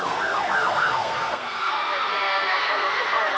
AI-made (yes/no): yes